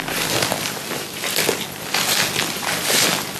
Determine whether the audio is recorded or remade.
recorded